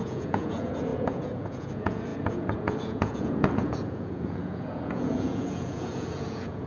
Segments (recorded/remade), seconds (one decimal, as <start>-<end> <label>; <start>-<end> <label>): 0.0-6.7 remade